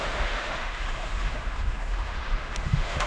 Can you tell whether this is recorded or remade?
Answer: remade